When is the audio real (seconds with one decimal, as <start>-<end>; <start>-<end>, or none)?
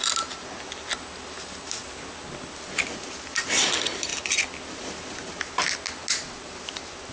0.0-7.1